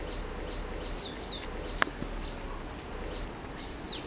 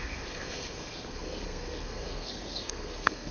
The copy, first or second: second